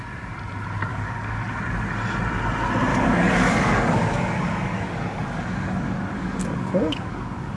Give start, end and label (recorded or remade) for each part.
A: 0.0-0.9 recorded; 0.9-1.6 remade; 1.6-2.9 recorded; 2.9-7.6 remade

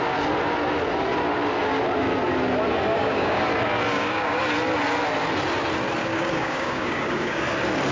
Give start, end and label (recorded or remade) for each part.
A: 0.0-2.9 recorded; 2.9-3.4 remade; 3.4-3.9 recorded; 3.9-4.4 remade; 4.4-6.0 recorded; 6.0-7.4 remade; 7.4-7.9 recorded

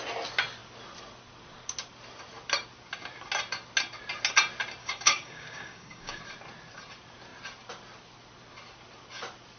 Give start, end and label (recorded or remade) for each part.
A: 0.0-4.8 recorded; 4.8-6.2 remade; 6.2-9.6 recorded

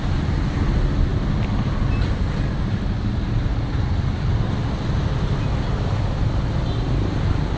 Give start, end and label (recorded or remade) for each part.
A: 0.0-7.6 recorded

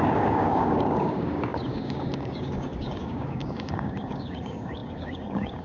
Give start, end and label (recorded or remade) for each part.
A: 0.0-5.6 remade

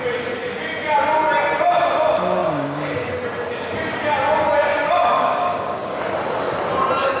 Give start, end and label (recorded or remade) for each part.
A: 0.0-2.4 recorded; 2.4-3.1 remade; 3.1-4.7 recorded; 4.7-6.0 remade; 6.0-7.2 recorded

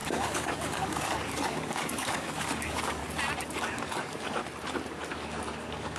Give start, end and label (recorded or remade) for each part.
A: 0.0-3.0 remade; 3.0-3.6 recorded; 3.6-4.4 remade; 4.4-5.1 recorded; 5.1-6.0 remade